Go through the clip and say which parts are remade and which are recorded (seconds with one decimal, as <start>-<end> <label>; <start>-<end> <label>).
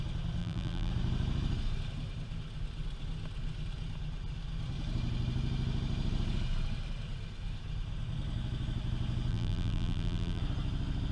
0.0-0.4 recorded; 0.4-0.9 remade; 0.9-9.3 recorded; 9.3-10.4 remade; 10.4-11.1 recorded